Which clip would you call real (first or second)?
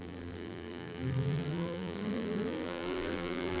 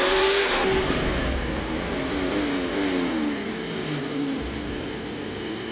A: second